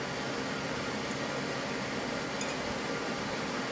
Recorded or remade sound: recorded